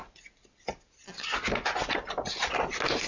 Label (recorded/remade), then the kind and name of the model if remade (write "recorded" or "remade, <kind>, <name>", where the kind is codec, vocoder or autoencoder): recorded